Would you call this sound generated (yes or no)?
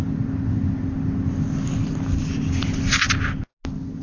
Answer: no